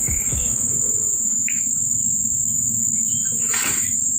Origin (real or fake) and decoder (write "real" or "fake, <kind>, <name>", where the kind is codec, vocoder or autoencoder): fake, autoencoder, DAC-VAE